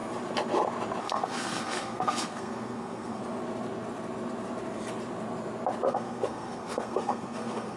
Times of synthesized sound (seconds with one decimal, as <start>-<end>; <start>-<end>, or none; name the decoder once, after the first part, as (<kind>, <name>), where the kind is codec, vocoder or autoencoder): 1.0-3.2 (codec, SNAC); 5.9-7.8

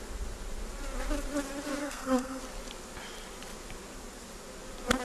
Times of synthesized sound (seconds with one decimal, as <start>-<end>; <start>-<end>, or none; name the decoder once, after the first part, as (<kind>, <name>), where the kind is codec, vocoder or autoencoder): 1.8-2.4 (codec, SNAC)

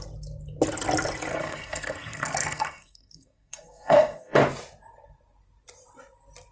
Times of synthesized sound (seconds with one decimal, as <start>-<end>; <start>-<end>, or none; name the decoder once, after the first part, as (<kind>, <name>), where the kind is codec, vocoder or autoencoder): 1.3-4.4 (codec, SNAC)